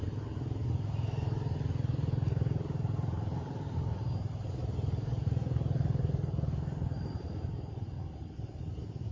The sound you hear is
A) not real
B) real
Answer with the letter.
B